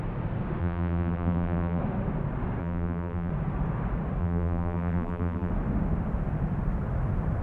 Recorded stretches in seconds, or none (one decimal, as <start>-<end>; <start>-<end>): 0.0-0.6; 1.8-2.6; 3.3-4.2; 5.5-7.4